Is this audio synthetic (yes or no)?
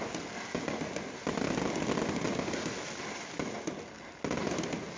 no